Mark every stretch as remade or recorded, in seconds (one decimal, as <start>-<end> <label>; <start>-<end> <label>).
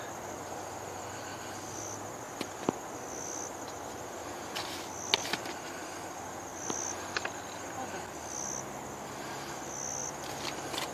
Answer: 0.0-10.9 recorded